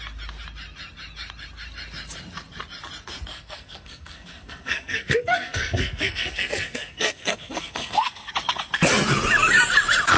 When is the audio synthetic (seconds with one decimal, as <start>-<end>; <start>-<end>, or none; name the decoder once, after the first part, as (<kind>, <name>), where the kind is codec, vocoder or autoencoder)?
3.3-8.3 (codec, SNAC)